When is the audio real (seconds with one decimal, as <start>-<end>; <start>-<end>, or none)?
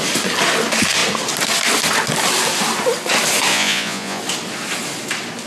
0.0-3.5; 4.2-5.5